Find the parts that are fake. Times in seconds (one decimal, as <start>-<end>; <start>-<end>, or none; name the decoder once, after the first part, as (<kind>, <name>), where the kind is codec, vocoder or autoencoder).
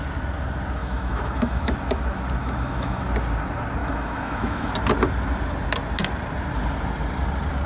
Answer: 0.8-1.7 (autoencoder, DAC-VAE); 2.4-3.0; 3.8-4.7